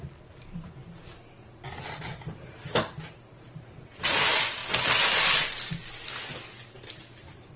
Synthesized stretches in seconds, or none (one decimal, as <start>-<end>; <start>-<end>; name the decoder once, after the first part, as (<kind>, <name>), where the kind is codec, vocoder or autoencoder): 0.0-0.8 (vocoder, BigVGAN v2); 2.0-4.6; 7.0-7.6